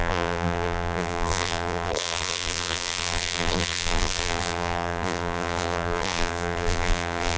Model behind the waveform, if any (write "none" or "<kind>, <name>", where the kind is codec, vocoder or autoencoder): vocoder, BigVGAN v2